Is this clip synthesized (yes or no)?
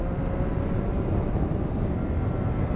no